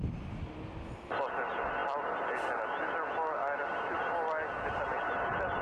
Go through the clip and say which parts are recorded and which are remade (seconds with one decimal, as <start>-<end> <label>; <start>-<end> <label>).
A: 0.0-5.6 recorded